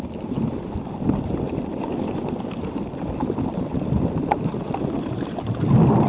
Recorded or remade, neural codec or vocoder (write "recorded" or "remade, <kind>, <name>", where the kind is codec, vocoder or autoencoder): recorded